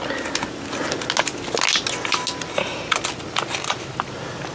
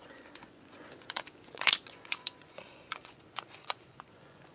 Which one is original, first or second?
first